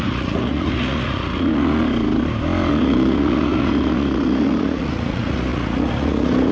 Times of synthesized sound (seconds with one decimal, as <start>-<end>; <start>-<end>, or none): 0.0-1.8; 2.7-6.5